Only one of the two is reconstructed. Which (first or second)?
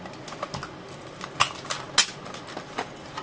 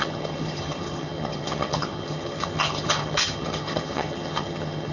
second